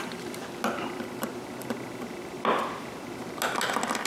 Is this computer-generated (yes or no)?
no